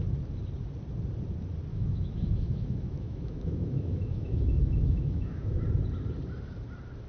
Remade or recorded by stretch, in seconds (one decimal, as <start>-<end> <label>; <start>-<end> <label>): 0.0-1.7 recorded; 1.7-5.6 remade; 5.6-7.1 recorded